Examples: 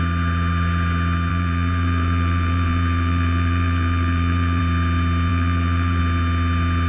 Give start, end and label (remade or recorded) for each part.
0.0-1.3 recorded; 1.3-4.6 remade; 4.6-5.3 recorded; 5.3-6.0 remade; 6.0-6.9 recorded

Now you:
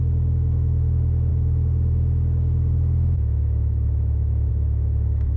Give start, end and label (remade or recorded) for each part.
0.0-5.4 remade

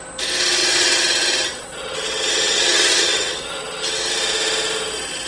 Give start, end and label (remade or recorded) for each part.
0.0-0.6 recorded; 0.6-3.8 remade; 3.8-5.3 recorded

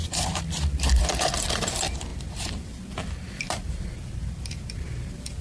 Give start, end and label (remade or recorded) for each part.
0.0-5.4 remade